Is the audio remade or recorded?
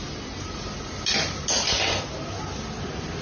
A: recorded